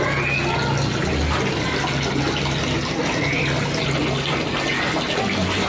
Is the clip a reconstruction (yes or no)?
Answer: no